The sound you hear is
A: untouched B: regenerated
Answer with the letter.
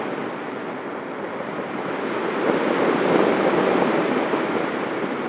A